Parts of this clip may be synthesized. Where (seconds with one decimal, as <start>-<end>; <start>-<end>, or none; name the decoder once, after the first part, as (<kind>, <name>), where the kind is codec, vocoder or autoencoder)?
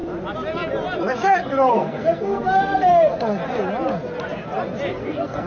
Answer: 1.0-3.4 (codec, SNAC); 5.0-5.5